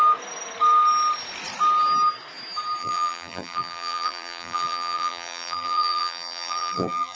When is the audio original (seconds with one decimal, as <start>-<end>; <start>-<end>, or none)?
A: 0.0-2.8